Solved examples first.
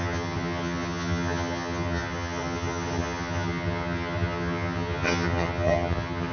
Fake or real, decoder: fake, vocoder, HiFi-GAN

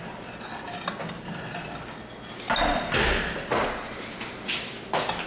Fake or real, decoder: real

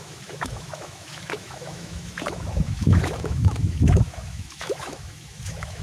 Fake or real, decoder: fake, autoencoder, DAC-VAE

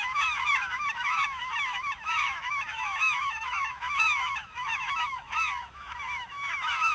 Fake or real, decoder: fake, autoencoder, DAC-VAE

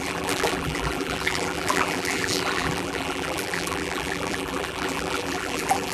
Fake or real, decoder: fake, vocoder, BigVGAN v2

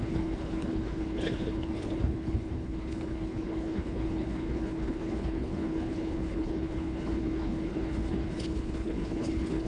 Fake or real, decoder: fake, codec, HILCodec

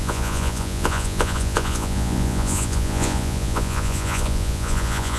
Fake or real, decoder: fake, vocoder, Vocos